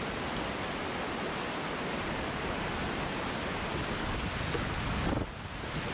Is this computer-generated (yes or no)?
no